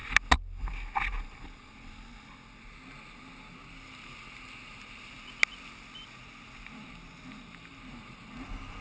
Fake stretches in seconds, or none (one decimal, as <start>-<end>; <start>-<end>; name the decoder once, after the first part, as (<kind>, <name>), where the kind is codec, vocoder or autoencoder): none